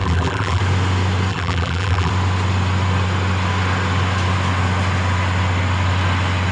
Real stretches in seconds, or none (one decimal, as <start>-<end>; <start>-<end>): 0.6-1.3; 2.1-6.5